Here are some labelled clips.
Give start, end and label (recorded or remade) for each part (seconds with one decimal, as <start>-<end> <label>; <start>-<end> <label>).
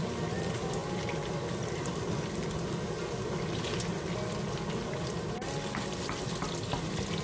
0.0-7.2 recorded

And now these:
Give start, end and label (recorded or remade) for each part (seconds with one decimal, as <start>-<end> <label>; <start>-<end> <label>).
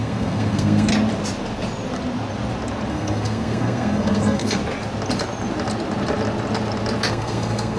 0.0-0.9 remade; 0.9-2.9 recorded; 2.9-4.6 remade; 4.6-7.1 recorded; 7.1-7.8 remade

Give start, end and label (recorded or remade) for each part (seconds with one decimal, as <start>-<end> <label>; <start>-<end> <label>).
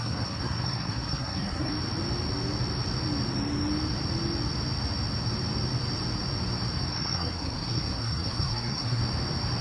0.0-1.7 remade; 1.7-6.9 recorded; 6.9-9.0 remade; 9.0-9.6 recorded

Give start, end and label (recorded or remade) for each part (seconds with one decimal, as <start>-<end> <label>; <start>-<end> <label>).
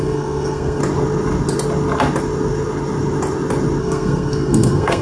0.0-0.8 remade; 0.8-3.8 recorded; 3.8-5.0 remade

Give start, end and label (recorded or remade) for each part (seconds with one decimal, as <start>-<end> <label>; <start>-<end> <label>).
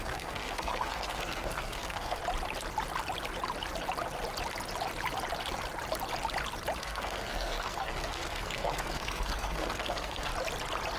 0.0-2.2 remade; 2.2-6.8 recorded; 6.8-10.3 remade; 10.3-11.0 recorded